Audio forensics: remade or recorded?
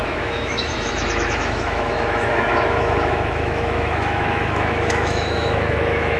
remade